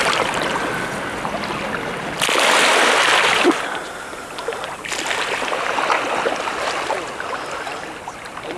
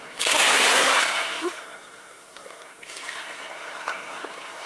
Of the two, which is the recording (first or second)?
first